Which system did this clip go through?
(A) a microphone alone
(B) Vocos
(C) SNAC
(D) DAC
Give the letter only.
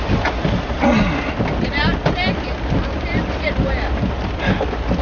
A